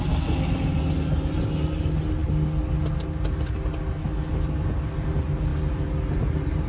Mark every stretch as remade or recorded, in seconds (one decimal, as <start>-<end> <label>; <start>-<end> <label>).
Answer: 0.0-6.7 recorded

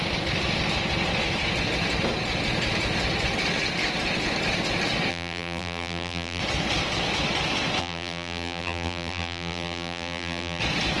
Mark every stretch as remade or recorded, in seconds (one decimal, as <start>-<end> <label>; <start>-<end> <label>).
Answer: 0.0-5.1 recorded; 5.1-6.4 remade; 6.4-7.8 recorded; 7.8-10.6 remade; 10.6-11.0 recorded

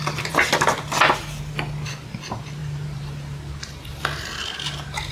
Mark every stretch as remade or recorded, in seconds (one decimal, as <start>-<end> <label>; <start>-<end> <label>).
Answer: 0.0-2.6 recorded; 2.6-3.1 remade; 3.1-5.1 recorded

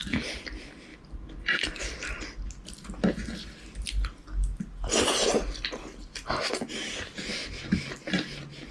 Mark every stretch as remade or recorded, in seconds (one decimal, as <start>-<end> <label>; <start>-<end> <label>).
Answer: 0.0-0.9 recorded; 0.9-2.2 remade; 2.2-8.7 recorded